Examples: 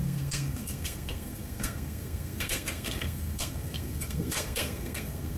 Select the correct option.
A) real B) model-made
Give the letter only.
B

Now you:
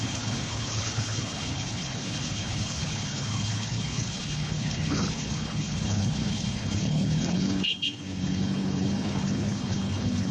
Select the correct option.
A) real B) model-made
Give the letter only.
B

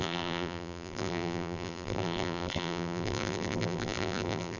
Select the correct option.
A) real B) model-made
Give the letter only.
B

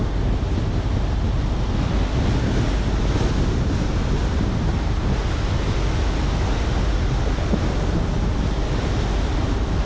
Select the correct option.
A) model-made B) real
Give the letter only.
B